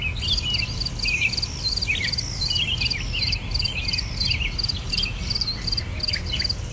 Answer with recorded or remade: recorded